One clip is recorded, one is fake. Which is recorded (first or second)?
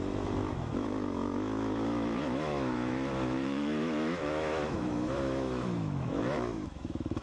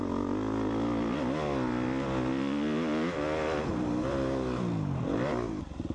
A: second